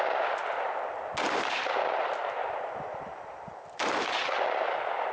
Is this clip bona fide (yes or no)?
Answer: yes